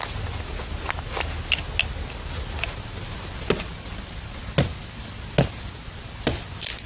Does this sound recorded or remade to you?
recorded